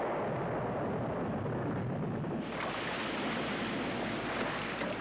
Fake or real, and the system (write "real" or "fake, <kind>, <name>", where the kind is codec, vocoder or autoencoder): real